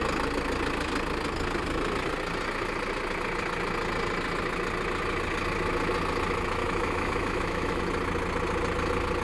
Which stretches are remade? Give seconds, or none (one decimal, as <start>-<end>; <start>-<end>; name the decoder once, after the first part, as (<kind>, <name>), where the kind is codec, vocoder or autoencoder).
6.6-7.8 (autoencoder, DAC-VAE)